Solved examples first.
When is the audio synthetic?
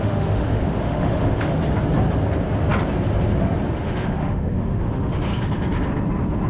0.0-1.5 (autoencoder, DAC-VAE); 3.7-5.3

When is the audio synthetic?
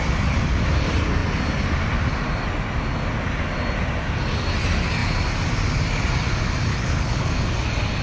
6.7-7.3 (codec, HILCodec)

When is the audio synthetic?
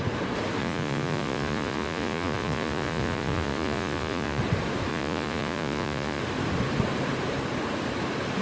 0.6-4.4 (vocoder, Vocos); 4.9-6.2